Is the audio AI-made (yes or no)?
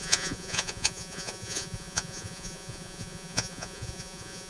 yes